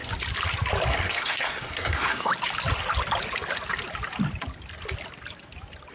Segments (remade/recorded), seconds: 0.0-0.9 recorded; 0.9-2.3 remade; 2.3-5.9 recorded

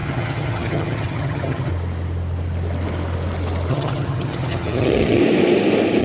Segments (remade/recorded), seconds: 0.0-1.7 remade; 1.7-3.7 recorded; 3.7-5.2 remade; 5.2-6.0 recorded